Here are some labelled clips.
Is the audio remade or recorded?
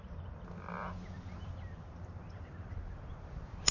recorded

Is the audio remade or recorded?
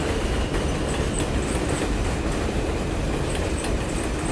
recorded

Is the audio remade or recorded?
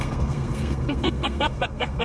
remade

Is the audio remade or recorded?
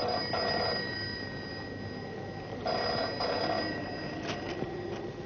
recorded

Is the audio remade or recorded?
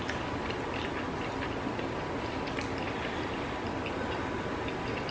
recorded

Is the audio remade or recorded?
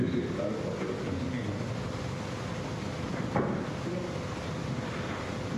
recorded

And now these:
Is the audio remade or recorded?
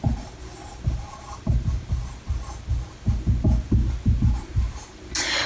recorded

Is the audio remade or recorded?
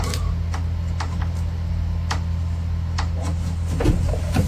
recorded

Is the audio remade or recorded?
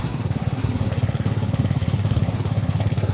remade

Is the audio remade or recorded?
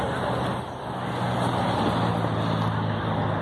recorded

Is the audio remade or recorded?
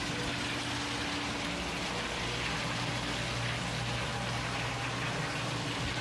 recorded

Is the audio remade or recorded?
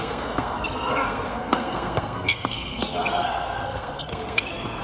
remade